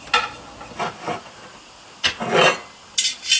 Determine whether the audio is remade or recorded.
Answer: recorded